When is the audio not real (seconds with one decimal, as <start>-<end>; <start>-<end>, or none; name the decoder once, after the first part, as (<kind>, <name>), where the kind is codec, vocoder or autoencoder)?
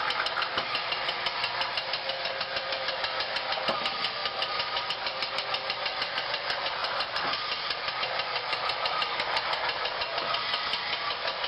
none